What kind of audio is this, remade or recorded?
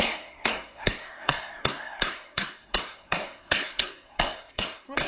remade